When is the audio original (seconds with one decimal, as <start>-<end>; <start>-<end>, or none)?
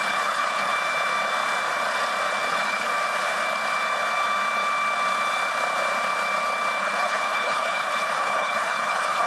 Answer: 0.7-2.5; 2.9-6.8